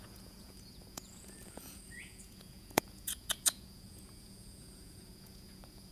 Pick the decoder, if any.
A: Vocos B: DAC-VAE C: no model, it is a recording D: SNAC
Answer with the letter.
A